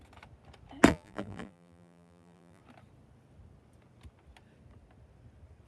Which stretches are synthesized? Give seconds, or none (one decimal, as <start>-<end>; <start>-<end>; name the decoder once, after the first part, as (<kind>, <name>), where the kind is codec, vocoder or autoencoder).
0.9-2.6 (vocoder, BigVGAN v2)